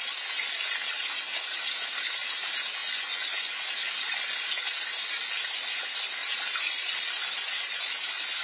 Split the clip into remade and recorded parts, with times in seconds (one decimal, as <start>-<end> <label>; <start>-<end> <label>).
0.0-2.8 recorded; 2.8-3.6 remade; 3.6-8.4 recorded